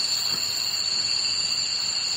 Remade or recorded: recorded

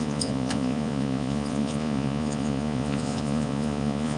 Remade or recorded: remade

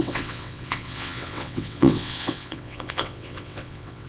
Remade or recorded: remade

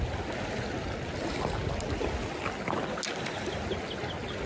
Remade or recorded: recorded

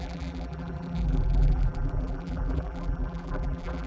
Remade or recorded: remade